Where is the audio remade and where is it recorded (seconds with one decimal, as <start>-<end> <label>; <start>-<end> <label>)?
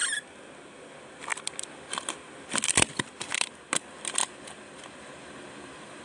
0.0-6.0 recorded